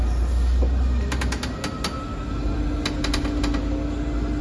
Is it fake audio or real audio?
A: real